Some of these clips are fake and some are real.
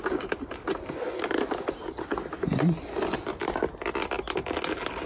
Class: real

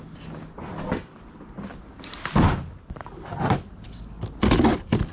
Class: real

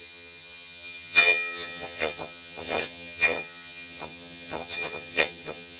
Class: fake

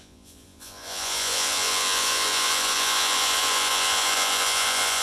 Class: fake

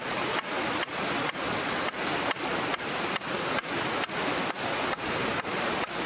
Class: real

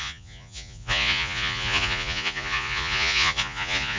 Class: fake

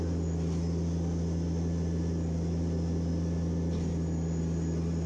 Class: real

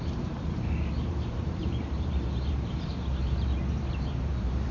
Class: fake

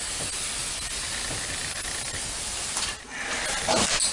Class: real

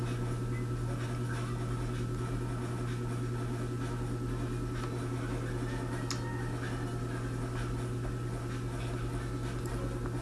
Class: real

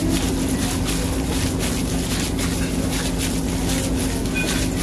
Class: real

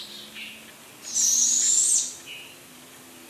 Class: real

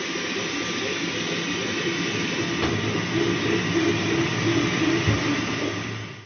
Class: real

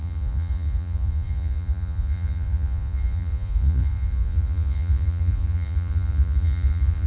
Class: fake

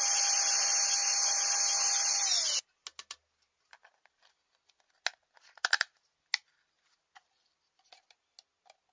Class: real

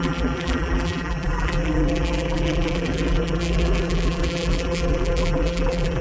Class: fake